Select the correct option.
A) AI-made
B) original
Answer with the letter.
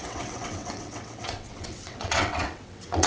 A